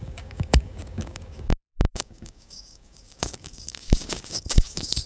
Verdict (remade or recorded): remade